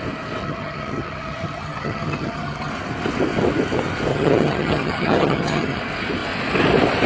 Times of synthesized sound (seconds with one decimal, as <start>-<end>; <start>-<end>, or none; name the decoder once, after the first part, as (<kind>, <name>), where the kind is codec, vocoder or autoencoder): 0.4-2.7 (vocoder, HiFi-GAN); 4.1-5.8